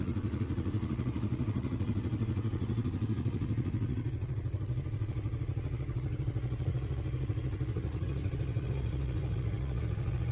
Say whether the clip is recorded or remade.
remade